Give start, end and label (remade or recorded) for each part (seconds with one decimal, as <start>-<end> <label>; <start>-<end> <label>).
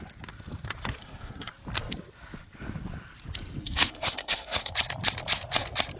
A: 0.0-1.0 recorded; 1.0-1.5 remade; 1.5-3.6 recorded; 3.6-4.7 remade; 4.7-6.0 recorded